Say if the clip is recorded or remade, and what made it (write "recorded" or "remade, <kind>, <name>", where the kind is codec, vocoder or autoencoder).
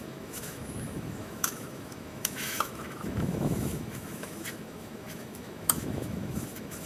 remade, autoencoder, DAC-VAE